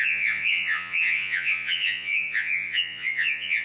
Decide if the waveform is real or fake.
fake